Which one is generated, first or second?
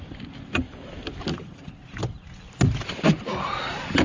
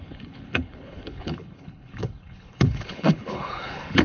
second